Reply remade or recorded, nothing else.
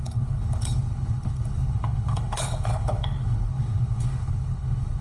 remade